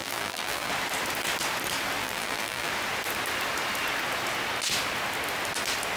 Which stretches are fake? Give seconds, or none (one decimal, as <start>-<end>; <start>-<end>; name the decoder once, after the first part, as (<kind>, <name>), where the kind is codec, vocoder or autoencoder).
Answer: 0.0-0.7 (vocoder, BigVGAN v2); 2.0-2.7